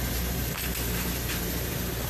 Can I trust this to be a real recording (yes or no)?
no